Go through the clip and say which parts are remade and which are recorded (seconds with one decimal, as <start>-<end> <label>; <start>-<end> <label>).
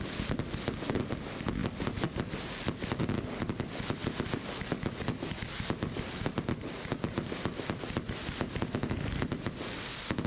0.0-10.3 recorded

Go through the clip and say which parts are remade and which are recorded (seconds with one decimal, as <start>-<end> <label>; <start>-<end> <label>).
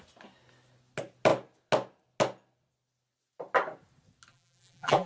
0.0-4.3 recorded; 4.3-5.1 remade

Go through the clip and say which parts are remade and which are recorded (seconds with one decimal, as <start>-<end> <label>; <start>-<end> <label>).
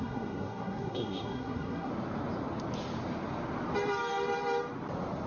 0.0-1.9 remade; 1.9-5.3 recorded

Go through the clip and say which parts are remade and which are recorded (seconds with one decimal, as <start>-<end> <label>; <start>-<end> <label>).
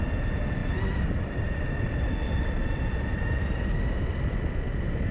0.0-0.6 recorded; 0.6-3.7 remade; 3.7-5.1 recorded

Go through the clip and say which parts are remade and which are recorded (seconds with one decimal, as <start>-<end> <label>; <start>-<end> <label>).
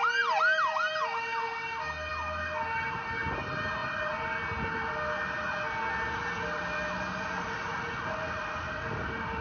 0.0-9.4 recorded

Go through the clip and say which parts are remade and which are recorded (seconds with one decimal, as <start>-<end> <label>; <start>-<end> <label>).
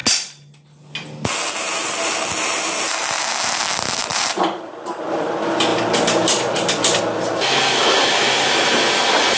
0.0-4.1 recorded; 4.1-5.3 remade; 5.3-5.7 recorded; 5.7-7.0 remade; 7.0-9.4 recorded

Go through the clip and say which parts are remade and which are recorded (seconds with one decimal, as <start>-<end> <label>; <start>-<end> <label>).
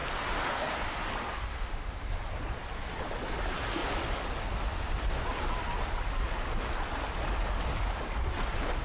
0.0-1.5 recorded; 1.5-2.1 remade; 2.1-8.8 recorded